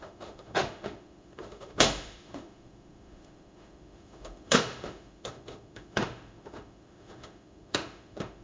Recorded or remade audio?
remade